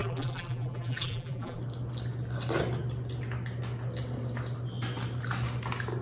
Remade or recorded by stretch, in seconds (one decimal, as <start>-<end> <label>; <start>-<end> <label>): 0.0-1.6 remade; 1.6-6.0 recorded